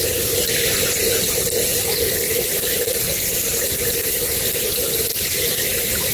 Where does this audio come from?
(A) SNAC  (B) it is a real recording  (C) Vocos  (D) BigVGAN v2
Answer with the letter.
B